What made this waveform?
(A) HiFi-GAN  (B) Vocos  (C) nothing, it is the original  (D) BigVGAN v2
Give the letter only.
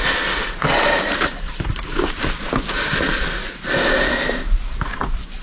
C